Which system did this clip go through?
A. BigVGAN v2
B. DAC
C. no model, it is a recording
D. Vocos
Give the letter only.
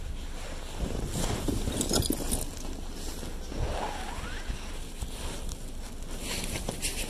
C